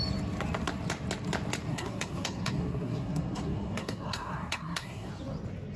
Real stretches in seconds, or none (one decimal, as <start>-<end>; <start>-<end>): 0.0-1.7; 5.1-5.8